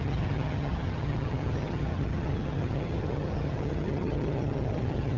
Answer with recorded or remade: remade